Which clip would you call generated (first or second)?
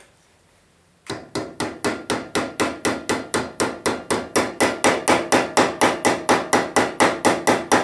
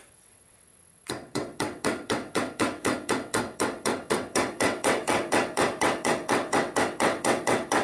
second